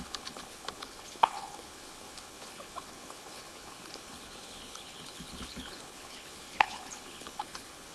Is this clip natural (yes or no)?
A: no